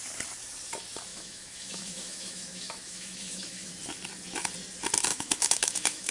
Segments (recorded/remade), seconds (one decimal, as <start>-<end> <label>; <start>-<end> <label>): 0.0-1.1 recorded; 1.1-3.7 remade; 3.7-5.1 recorded; 5.1-6.1 remade